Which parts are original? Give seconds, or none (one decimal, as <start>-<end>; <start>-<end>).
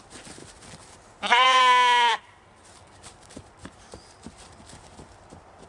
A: 0.0-0.4; 1.6-2.1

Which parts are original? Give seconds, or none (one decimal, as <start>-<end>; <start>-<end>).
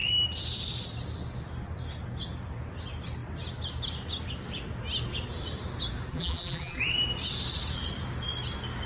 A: 0.0-6.1; 6.8-8.9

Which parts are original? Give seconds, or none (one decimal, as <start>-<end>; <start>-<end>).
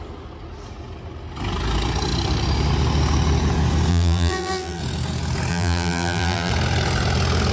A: 0.0-3.9; 4.8-5.5; 6.5-7.5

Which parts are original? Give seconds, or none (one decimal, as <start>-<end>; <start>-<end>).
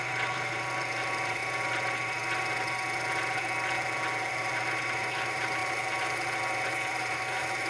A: 1.4-4.3; 5.6-6.9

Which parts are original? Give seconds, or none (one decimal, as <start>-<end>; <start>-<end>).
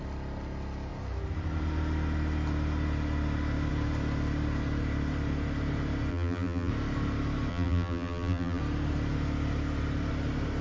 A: 0.0-6.1; 6.7-7.5; 8.6-10.6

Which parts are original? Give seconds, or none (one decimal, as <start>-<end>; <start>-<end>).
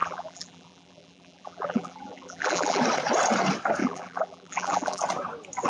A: 2.8-3.8; 5.0-5.7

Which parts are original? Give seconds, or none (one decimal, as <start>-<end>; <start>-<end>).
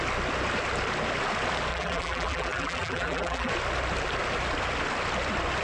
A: 0.0-1.7; 3.5-5.6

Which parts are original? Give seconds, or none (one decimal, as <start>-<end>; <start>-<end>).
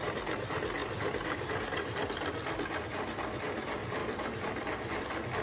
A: 0.0-0.8; 1.6-4.0; 5.0-5.4